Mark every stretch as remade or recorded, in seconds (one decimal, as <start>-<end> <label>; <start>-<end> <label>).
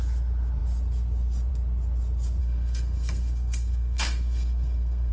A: 0.0-2.4 recorded; 2.4-5.1 remade